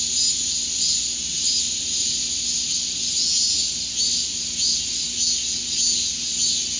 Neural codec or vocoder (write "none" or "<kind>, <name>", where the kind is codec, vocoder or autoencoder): none